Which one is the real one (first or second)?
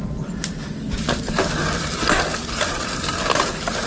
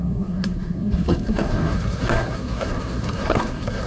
first